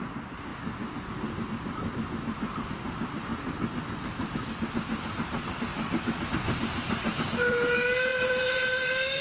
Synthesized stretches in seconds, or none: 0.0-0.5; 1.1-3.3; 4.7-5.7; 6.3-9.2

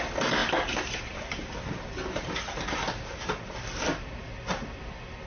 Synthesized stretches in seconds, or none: 0.0-0.4; 3.6-5.3

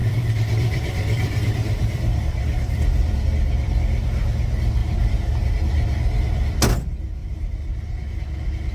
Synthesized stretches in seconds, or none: 0.0-3.3; 4.8-5.5; 7.2-8.2